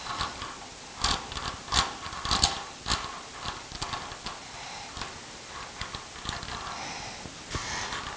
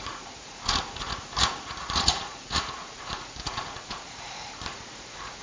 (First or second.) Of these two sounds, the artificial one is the second